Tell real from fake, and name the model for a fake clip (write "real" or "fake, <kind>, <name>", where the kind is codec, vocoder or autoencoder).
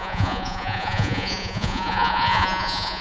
fake, vocoder, Vocos